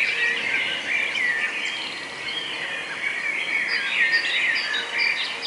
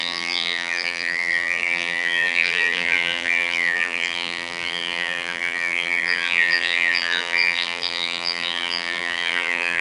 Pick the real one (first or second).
first